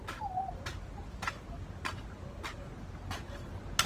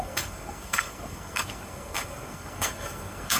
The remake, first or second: second